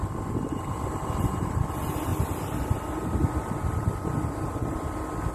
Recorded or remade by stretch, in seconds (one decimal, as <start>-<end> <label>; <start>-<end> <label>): 0.0-1.0 recorded; 1.0-1.6 remade; 1.6-5.3 recorded